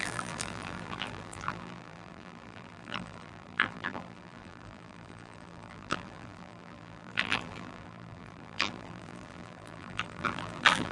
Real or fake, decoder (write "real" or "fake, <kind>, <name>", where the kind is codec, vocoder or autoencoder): fake, vocoder, BigVGAN v2